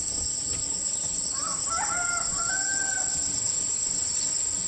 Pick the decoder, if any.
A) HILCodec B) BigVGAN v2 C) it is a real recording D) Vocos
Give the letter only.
C